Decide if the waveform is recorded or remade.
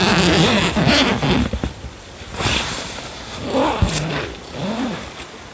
recorded